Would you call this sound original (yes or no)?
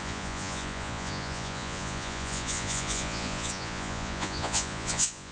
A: no